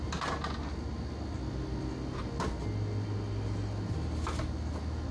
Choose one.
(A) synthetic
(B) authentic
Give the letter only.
B